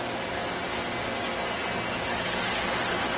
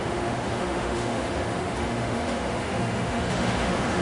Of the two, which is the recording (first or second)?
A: first